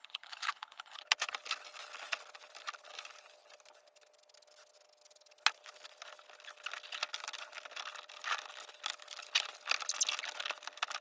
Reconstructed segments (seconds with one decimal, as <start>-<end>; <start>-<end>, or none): 0.0-1.0